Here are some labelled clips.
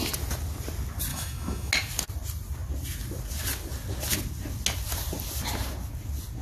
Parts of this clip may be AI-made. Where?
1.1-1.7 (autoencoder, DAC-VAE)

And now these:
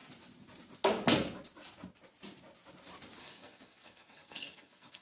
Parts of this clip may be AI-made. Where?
3.2-5.0 (codec, SNAC)

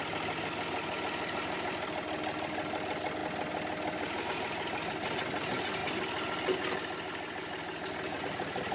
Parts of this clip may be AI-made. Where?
none